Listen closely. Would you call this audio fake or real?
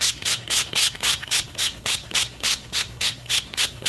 fake